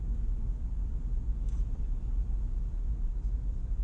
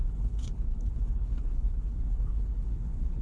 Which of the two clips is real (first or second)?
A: first